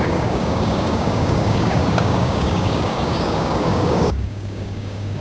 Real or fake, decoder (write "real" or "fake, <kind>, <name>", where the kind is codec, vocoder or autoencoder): fake, codec, DAC